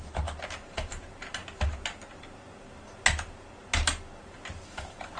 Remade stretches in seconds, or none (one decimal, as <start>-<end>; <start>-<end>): none